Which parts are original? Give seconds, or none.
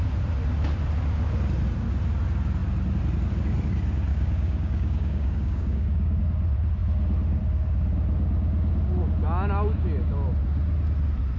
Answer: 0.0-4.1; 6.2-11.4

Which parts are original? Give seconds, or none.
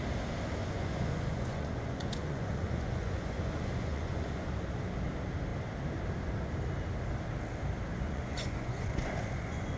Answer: 0.0-0.6; 4.4-7.9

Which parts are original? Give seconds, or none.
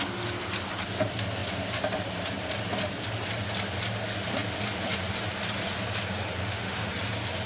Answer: 0.0-6.4; 6.9-7.5